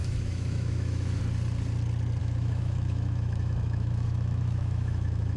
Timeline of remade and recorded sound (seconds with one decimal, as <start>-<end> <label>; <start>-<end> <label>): 0.0-1.2 remade; 1.2-2.2 recorded; 2.2-5.4 remade